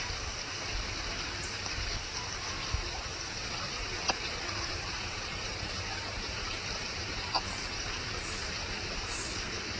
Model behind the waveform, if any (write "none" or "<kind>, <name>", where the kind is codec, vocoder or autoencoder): vocoder, BigVGAN v2